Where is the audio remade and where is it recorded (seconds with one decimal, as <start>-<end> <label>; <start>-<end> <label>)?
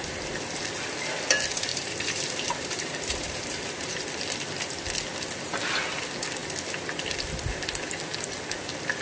0.0-1.7 recorded; 1.7-3.6 remade; 3.6-9.0 recorded